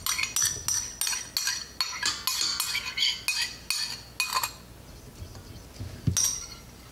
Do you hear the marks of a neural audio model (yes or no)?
no